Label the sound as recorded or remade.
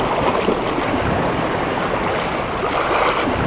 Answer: recorded